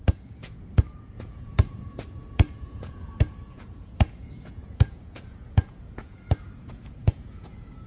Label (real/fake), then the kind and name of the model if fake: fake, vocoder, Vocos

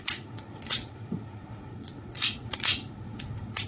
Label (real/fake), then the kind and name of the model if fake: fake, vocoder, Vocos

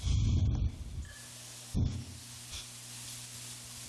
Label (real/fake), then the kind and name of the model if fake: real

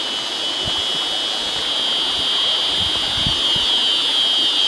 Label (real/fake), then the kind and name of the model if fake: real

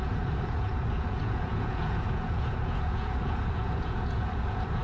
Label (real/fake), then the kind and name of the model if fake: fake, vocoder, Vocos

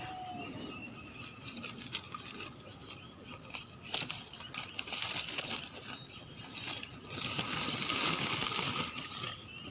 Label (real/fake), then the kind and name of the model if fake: real